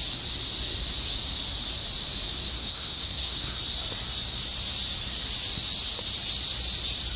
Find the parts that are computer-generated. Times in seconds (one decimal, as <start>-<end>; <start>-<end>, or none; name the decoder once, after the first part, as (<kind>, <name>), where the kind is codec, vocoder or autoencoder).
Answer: 2.6-3.5 (codec, SNAC)